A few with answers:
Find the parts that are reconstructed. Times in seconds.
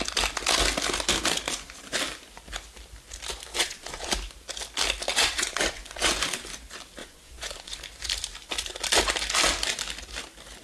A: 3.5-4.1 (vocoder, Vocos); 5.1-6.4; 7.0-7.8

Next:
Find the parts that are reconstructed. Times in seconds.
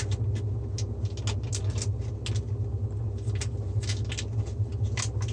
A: none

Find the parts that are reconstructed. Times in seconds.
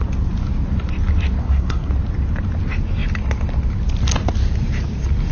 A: 1.4-1.9 (codec, SNAC)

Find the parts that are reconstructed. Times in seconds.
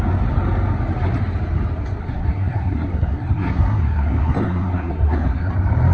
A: 2.0-5.5 (codec, SNAC)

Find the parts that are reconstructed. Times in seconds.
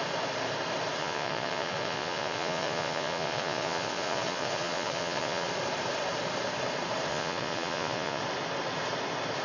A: 1.0-5.5 (vocoder, Vocos); 7.1-8.2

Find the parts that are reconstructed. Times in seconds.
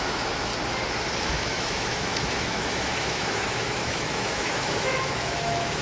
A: 0.0-0.5 (autoencoder, DAC-VAE); 1.2-5.8